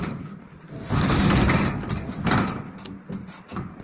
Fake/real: real